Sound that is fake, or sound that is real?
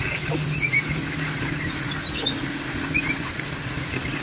real